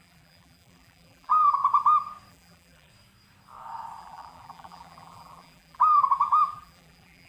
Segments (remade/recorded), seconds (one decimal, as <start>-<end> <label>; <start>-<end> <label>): 0.0-1.6 remade; 1.6-2.3 recorded; 2.3-2.9 remade; 2.9-4.0 recorded; 4.0-7.3 remade